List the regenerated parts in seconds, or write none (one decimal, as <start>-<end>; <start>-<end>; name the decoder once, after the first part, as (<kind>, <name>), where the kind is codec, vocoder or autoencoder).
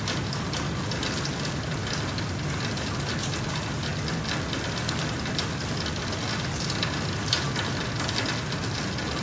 none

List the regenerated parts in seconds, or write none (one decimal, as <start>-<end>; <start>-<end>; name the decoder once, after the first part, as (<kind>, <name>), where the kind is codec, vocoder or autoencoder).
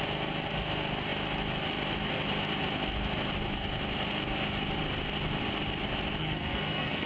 6.2-7.1 (codec, SNAC)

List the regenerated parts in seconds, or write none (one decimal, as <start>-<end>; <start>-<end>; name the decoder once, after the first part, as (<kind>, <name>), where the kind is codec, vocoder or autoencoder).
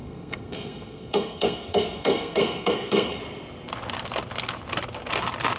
0.0-3.2 (codec, SNAC)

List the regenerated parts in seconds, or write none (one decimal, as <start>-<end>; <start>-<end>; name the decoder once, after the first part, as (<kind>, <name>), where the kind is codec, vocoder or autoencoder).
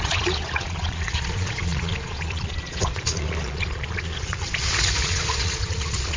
0.0-6.2 (vocoder, Vocos)